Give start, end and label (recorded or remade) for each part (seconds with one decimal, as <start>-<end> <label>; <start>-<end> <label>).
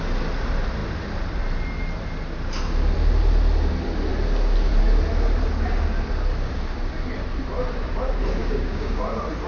0.0-8.4 recorded; 8.4-9.0 remade; 9.0-9.5 recorded